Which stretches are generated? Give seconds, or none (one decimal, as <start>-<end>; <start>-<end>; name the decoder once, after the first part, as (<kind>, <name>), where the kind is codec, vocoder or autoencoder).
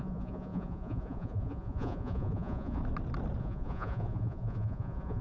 0.0-2.8 (vocoder, Vocos); 3.4-5.2